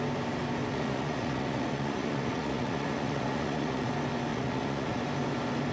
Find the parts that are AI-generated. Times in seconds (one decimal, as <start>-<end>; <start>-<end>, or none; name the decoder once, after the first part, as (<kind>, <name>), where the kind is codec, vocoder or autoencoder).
0.7-3.9 (vocoder, Vocos); 4.3-5.0